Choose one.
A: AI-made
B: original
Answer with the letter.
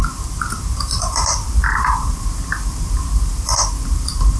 A